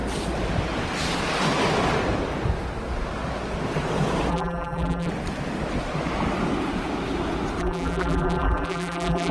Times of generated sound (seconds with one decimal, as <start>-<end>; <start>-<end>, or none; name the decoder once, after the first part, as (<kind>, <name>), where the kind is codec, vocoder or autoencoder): 4.3-5.1 (vocoder, BigVGAN v2); 7.6-9.3